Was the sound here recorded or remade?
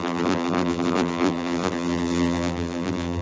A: remade